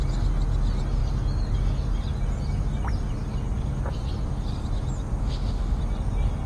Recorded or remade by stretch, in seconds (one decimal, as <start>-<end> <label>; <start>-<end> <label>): 0.0-5.2 recorded; 5.2-5.8 remade; 5.8-6.5 recorded